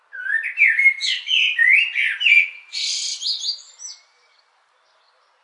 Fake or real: real